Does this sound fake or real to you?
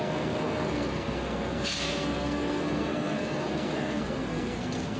fake